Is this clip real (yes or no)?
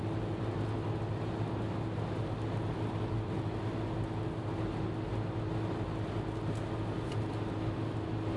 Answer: yes